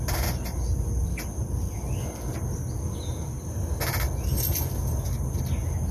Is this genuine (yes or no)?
yes